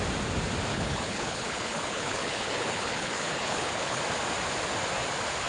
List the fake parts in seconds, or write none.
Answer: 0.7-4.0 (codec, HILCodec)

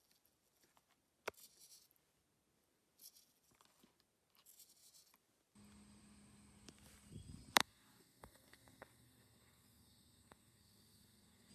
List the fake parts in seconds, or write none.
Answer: 7.6-11.5 (codec, SNAC)

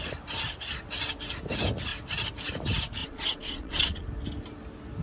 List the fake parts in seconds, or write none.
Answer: 3.0-4.0 (vocoder, Vocos)

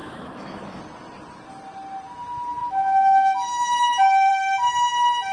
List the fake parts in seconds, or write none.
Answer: 0.0-0.8 (autoencoder, DAC-VAE); 2.6-4.3

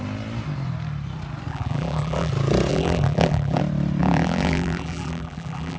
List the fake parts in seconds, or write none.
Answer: 1.5-2.3 (vocoder, BigVGAN v2); 2.7-3.6; 4.0-5.8

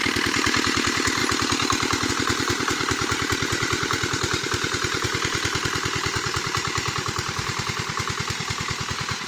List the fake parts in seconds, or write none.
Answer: 0.0-1.2 (vocoder, BigVGAN v2); 2.1-9.3